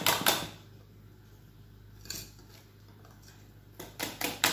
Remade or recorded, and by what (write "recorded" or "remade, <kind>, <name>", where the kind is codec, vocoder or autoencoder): recorded